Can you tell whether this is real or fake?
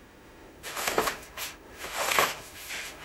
fake